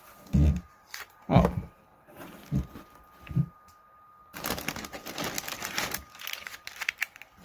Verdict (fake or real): real